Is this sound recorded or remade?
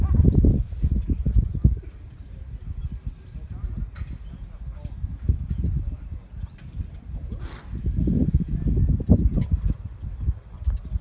recorded